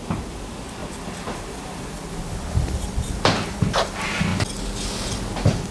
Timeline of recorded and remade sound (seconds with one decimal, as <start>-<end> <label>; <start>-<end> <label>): 0.0-0.8 recorded; 0.8-1.9 remade; 1.9-2.6 recorded; 2.6-3.2 remade; 3.2-5.7 recorded